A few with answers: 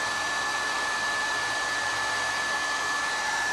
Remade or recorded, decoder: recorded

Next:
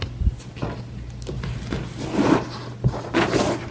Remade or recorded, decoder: recorded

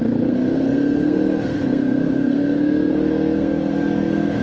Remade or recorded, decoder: remade, codec, SNAC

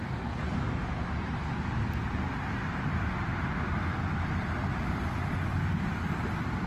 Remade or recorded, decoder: recorded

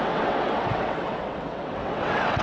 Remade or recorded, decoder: remade, vocoder, WaveNeXt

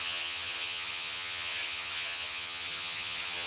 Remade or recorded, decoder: remade, vocoder, HiFi-GAN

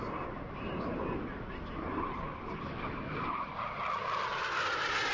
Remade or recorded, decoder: recorded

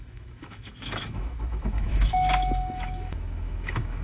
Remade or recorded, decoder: remade, autoencoder, DAC-VAE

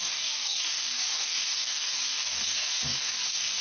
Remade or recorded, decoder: remade, codec, DAC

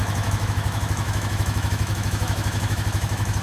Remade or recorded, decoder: remade, autoencoder, DAC-VAE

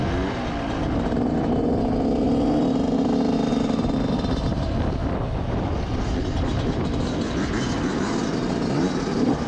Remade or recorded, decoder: recorded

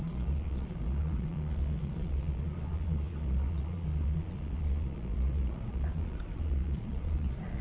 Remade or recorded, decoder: remade, vocoder, Vocos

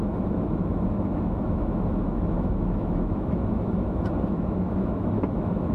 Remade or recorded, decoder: remade, autoencoder, DAC-VAE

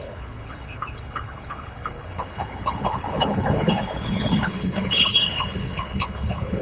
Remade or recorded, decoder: remade, codec, HILCodec